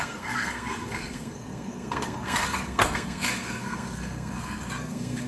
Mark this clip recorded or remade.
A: remade